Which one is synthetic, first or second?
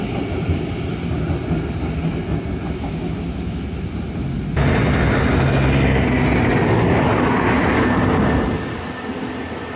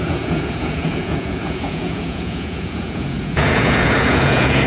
second